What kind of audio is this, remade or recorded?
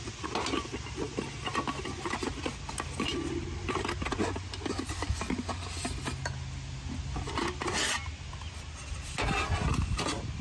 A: recorded